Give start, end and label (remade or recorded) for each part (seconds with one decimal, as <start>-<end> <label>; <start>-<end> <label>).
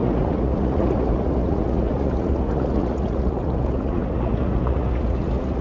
0.0-5.6 remade